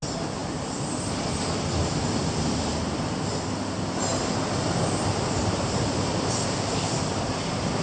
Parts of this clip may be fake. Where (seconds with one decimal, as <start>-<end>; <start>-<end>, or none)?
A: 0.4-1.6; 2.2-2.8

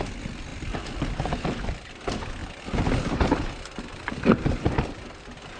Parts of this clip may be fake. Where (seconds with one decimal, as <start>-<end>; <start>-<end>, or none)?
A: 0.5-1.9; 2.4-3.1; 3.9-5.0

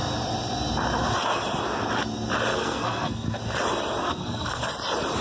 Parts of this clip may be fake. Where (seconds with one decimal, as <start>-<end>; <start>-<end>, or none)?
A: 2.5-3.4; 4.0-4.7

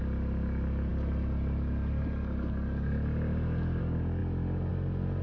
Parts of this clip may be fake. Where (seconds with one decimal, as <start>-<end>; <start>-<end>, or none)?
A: none

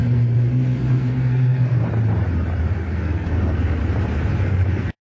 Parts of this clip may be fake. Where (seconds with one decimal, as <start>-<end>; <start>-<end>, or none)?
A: 0.0-1.8; 2.6-3.8; 4.4-5.0